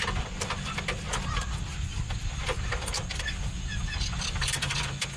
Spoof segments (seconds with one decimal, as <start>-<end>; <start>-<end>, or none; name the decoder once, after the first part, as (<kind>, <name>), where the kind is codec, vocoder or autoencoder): 0.0-2.9 (vocoder, BigVGAN v2); 4.2-5.2